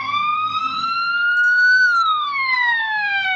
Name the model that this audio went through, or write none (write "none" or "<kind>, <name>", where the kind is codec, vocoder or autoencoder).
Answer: codec, SNAC